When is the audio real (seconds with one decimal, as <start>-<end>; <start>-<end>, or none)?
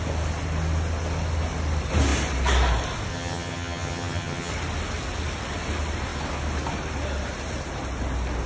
0.0-3.1; 4.5-8.5